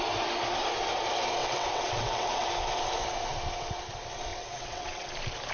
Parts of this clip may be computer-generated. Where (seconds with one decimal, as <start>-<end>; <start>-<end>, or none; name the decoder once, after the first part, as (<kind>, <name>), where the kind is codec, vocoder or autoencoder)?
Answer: 1.4-2.5 (vocoder, WaveNeXt); 4.3-5.1